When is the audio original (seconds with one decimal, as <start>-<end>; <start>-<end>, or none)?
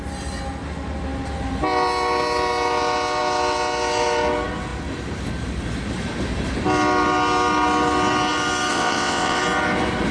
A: 0.0-8.7; 9.4-10.1